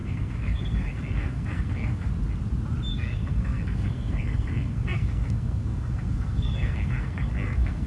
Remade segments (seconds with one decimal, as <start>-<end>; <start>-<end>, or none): 0.0-2.1; 2.9-7.9